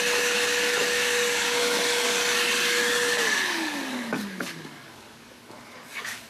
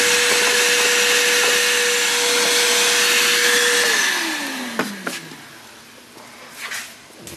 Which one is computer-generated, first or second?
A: first